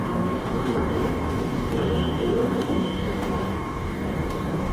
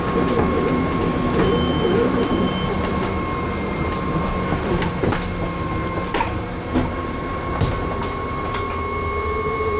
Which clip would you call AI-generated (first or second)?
first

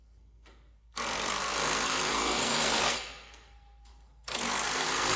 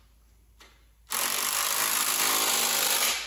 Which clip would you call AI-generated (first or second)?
first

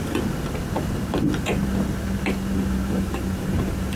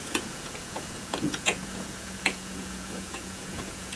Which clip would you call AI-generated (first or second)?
second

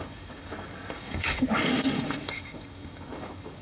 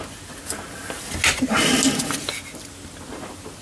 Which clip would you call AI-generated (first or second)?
first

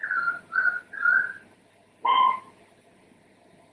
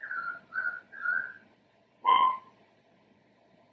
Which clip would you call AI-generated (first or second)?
second